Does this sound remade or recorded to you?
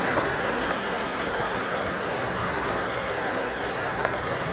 remade